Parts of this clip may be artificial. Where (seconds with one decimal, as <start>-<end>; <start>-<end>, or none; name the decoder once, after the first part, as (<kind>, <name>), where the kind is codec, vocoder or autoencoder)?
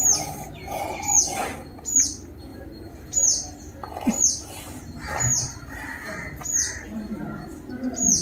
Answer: 2.5-4.1 (vocoder, BigVGAN v2); 5.3-7.2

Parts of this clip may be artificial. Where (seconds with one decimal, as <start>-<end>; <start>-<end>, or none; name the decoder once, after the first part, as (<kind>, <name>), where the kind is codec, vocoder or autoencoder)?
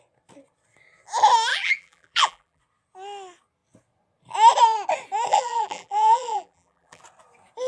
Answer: 1.5-2.6 (vocoder, BigVGAN v2); 5.3-7.0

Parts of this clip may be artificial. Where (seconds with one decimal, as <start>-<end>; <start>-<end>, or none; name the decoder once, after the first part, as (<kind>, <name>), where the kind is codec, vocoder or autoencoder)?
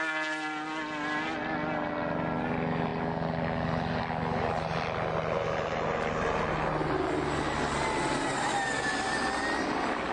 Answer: none